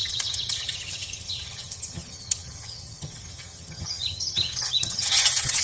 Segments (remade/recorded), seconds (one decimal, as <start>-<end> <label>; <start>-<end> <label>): 0.0-5.6 remade